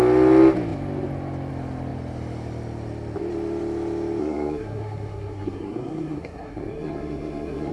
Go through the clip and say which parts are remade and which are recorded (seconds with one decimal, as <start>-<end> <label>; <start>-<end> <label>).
0.0-4.2 recorded; 4.2-7.7 remade